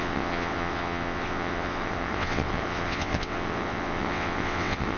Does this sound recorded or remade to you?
remade